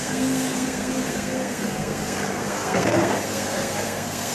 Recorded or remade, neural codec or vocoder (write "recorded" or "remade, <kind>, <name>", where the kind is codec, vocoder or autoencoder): remade, codec, SNAC